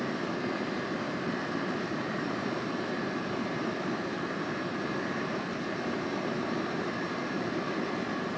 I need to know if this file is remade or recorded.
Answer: remade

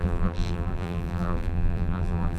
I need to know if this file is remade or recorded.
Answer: remade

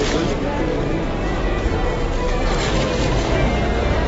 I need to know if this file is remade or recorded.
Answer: recorded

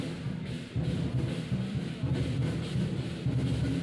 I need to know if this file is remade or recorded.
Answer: remade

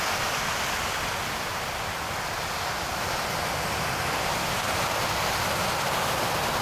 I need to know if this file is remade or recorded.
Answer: recorded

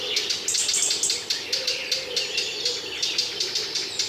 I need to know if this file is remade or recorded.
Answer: recorded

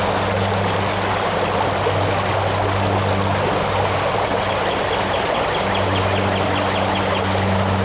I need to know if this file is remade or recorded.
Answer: recorded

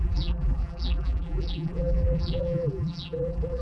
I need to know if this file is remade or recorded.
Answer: remade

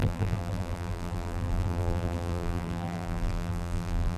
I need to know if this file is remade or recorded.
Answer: remade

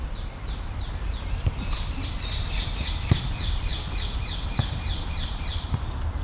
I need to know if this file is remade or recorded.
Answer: remade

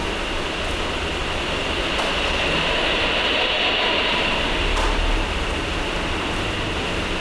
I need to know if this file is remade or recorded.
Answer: recorded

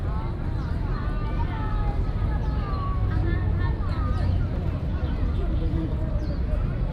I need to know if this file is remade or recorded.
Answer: recorded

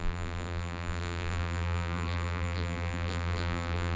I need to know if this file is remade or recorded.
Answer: remade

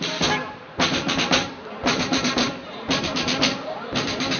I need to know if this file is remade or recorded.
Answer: remade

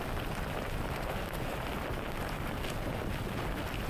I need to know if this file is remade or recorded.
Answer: recorded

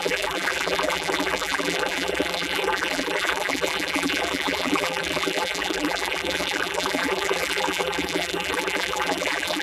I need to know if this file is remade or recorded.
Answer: remade